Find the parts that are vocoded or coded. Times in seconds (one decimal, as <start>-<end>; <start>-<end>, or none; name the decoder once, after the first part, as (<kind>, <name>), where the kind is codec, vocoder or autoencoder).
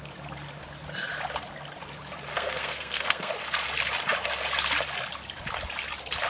2.3-3.3 (codec, SNAC)